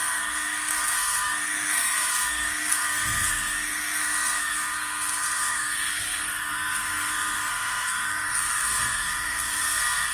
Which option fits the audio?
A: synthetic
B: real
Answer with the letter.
A